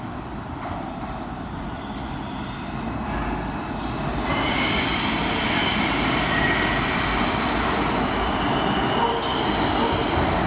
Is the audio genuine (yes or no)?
yes